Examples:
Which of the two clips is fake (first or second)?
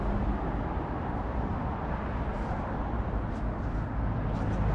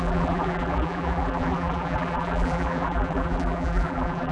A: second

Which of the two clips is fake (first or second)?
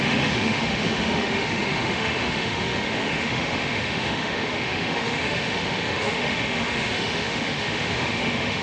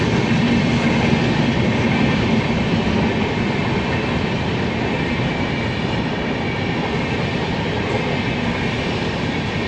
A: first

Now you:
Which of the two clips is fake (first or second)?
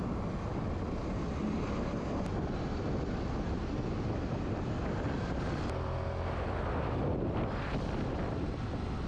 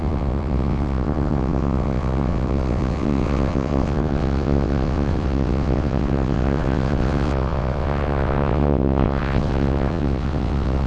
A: second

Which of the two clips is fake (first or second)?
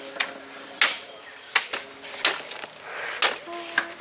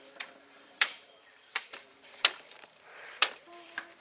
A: second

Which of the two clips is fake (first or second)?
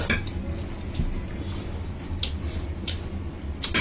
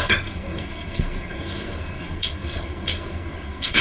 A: second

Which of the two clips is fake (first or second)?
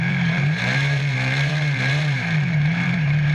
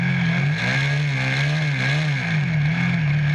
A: first